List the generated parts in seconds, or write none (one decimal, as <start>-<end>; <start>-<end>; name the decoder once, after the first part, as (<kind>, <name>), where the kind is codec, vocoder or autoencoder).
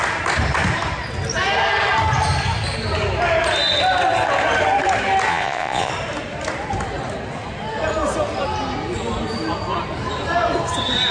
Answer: 5.3-5.9 (vocoder, Vocos)